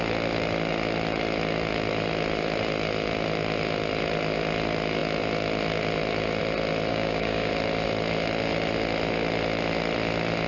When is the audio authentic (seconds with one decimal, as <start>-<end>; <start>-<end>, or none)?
0.0-6.9; 7.5-10.5